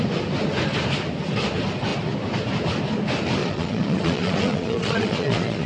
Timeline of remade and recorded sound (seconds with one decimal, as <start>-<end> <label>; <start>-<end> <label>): 0.0-3.4 recorded; 3.4-5.7 remade